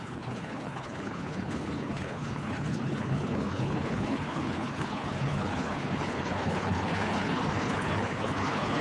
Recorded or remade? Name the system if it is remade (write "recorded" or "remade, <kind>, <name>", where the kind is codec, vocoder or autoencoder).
remade, codec, HILCodec